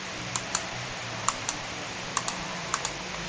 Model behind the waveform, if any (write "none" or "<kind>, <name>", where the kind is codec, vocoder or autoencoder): vocoder, BigVGAN v2